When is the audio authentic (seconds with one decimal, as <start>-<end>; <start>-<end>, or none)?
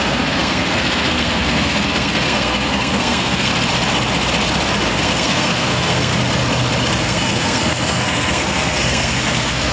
3.5-4.9; 6.1-7.0